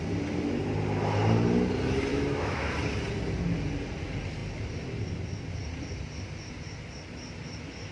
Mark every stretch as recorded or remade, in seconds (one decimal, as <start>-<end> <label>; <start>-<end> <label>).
0.0-2.1 recorded; 2.1-2.7 remade; 2.7-7.9 recorded